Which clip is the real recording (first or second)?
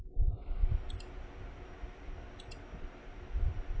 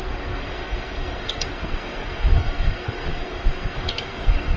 first